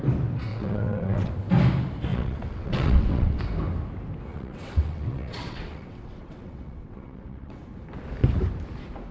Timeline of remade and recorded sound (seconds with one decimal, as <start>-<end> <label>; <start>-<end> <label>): 0.0-0.5 recorded; 0.5-1.3 remade; 1.3-2.1 recorded; 2.1-3.4 remade; 3.4-4.3 recorded; 4.3-7.6 remade; 7.6-9.1 recorded

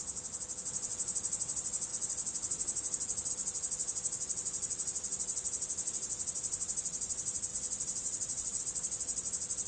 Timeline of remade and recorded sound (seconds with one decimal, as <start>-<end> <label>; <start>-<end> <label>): 0.0-7.5 recorded; 7.5-8.6 remade; 8.6-9.7 recorded

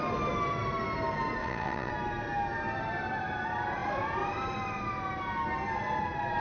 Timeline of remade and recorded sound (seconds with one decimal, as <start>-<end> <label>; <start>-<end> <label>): 0.0-1.4 recorded; 1.4-1.9 remade; 1.9-6.4 recorded